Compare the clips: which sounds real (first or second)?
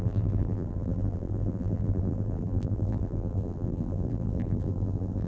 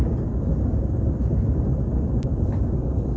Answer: second